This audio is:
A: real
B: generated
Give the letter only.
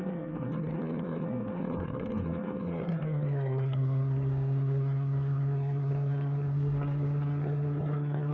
B